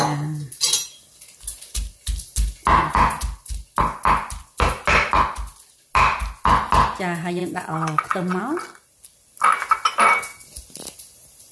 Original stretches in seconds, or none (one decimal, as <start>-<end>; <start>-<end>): 0.0-7.4; 8.4-11.5